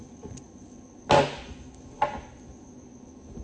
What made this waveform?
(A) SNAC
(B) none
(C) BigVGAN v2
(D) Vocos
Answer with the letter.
B